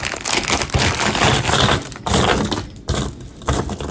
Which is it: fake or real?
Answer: real